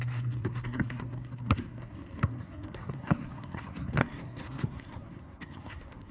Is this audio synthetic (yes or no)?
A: yes